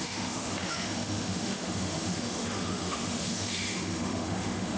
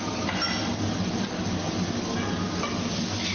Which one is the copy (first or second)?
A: first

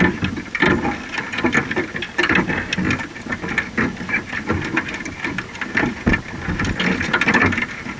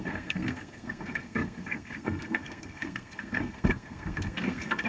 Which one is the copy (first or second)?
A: second